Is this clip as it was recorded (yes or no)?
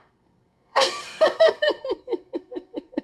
no